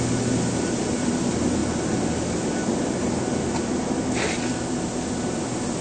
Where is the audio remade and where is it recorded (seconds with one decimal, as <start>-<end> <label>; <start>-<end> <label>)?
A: 0.0-5.8 recorded